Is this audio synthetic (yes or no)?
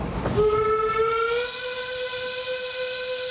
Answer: no